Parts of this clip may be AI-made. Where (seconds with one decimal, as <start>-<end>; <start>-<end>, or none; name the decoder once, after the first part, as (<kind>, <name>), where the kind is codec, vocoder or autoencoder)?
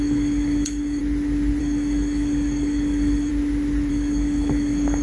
0.0-1.0 (codec, DAC); 1.6-3.3; 3.9-5.0